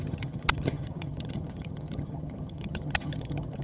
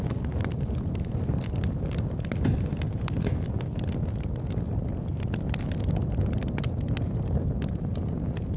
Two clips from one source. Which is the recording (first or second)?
second